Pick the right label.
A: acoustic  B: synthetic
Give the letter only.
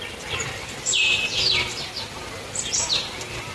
A